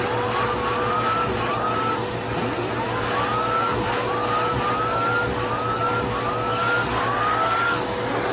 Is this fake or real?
real